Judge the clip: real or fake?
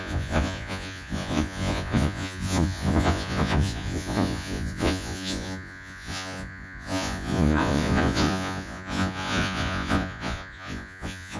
fake